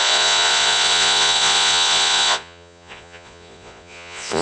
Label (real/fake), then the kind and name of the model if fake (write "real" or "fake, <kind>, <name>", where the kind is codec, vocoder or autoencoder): fake, vocoder, Vocos